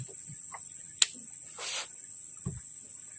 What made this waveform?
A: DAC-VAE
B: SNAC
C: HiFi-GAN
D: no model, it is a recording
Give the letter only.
D